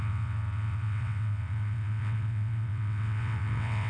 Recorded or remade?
remade